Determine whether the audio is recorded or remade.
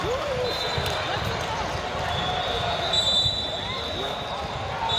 recorded